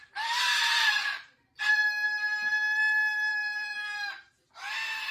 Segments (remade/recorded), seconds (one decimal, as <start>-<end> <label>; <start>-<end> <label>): 0.0-1.7 remade; 1.7-3.3 recorded; 3.3-4.5 remade; 4.5-5.1 recorded